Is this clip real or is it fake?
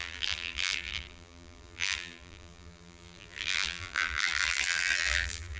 fake